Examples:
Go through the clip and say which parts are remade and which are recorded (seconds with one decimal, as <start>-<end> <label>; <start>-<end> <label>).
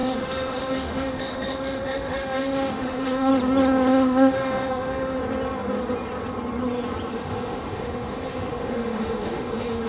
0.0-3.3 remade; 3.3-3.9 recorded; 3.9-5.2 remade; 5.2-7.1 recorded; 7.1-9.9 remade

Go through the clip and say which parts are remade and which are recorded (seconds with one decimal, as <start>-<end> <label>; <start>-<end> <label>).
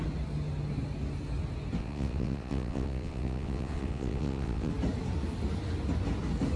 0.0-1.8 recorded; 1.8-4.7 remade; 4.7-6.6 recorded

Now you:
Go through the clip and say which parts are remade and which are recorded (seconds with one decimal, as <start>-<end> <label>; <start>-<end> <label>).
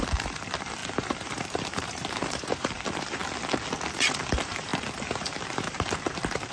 0.0-3.2 remade; 3.2-3.9 recorded; 3.9-6.5 remade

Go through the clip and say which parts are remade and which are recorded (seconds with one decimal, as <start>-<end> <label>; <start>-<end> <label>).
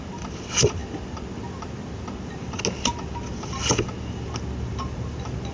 0.0-5.5 recorded